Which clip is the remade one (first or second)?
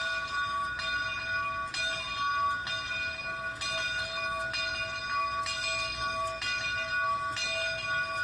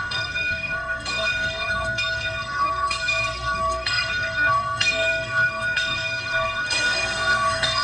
second